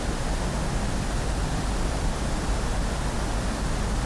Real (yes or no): yes